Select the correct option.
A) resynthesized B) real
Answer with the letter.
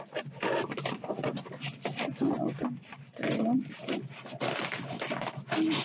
B